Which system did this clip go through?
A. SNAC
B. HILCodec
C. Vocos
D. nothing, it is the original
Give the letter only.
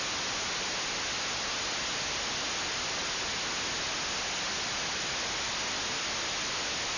D